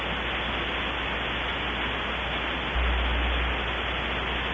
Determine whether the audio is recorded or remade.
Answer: recorded